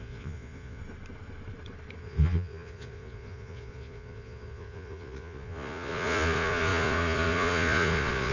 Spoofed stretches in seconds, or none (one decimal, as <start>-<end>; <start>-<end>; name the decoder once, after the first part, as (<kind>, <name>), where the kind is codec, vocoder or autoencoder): 0.0-0.8 (vocoder, Vocos); 2.0-8.3